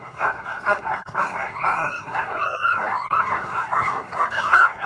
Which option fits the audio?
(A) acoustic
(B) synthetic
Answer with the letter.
B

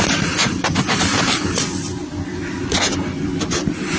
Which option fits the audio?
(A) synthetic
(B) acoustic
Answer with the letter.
B